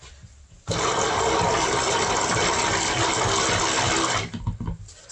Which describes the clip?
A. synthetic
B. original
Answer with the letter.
B